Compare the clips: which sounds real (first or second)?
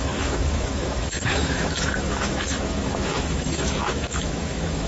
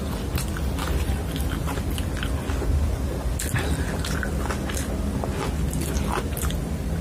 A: second